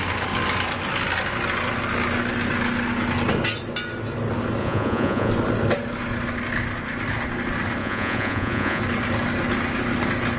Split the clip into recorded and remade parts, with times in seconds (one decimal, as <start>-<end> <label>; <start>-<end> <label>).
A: 0.0-4.6 recorded; 4.6-5.3 remade; 5.3-7.8 recorded; 7.8-8.8 remade; 8.8-10.4 recorded